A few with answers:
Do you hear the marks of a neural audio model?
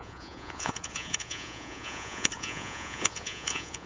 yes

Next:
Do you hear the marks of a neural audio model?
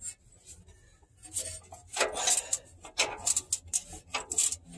no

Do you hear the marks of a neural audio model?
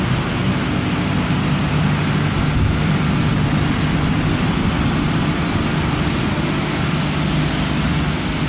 no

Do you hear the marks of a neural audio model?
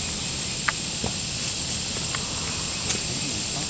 no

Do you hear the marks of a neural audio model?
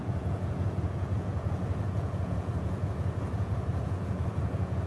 yes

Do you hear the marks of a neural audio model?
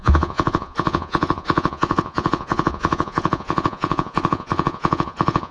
yes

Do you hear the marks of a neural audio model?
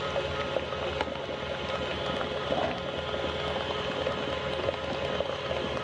no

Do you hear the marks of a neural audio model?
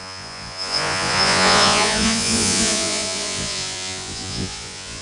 yes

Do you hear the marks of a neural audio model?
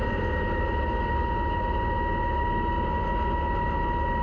no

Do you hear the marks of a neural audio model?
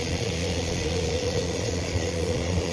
yes